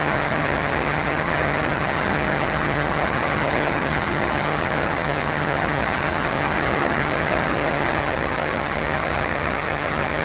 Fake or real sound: fake